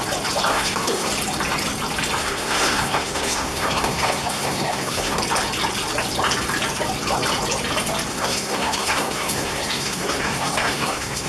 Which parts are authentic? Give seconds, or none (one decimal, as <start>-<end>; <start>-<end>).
0.0-0.5; 1.1-2.2; 5.2-8.1